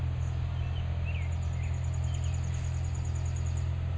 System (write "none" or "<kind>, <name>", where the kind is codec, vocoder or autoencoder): none